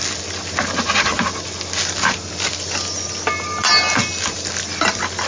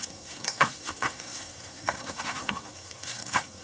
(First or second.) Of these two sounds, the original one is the first